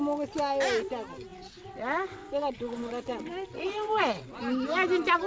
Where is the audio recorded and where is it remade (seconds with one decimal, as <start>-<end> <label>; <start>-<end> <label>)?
0.0-1.3 recorded; 1.3-4.4 remade; 4.4-5.3 recorded